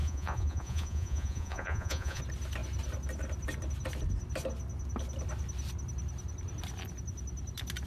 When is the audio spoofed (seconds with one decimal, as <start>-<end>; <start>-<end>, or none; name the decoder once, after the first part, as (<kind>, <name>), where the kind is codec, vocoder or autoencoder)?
0.0-2.2 (vocoder, Vocos)